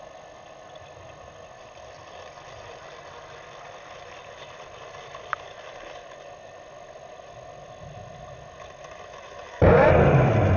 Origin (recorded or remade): recorded